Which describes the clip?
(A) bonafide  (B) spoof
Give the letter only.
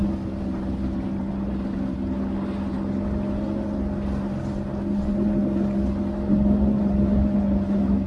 A